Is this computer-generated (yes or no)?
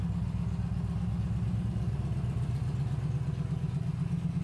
no